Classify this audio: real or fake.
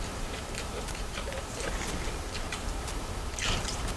fake